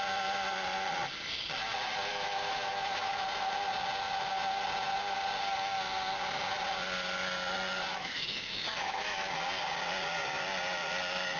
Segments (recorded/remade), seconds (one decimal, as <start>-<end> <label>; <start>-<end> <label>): 0.0-2.1 recorded; 2.1-3.2 remade; 3.2-7.9 recorded; 7.9-9.3 remade; 9.3-11.4 recorded